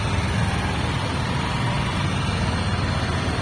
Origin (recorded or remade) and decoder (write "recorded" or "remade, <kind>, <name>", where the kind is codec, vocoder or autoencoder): recorded